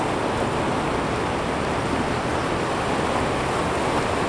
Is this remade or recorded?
recorded